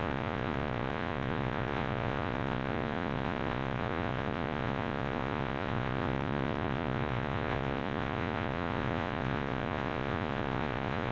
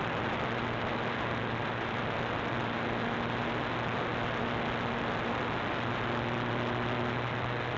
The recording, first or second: second